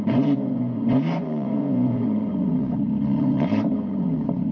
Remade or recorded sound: remade